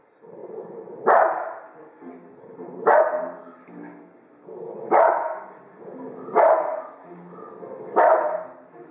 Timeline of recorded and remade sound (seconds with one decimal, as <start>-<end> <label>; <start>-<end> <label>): 0.0-0.4 recorded; 0.4-3.0 remade; 3.0-8.9 recorded